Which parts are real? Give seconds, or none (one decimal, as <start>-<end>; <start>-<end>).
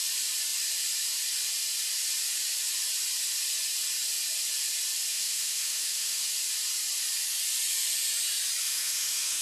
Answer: 0.0-5.1; 6.3-8.6